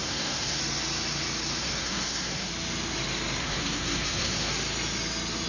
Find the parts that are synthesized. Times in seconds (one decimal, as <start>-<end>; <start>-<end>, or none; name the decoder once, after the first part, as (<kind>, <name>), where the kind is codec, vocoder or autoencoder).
0.0-0.6 (codec, SNAC); 1.6-2.5; 3.4-4.5